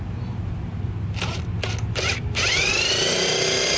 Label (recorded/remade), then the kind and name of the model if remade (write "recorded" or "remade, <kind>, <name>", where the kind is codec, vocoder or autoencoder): recorded